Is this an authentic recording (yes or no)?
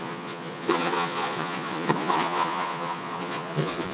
no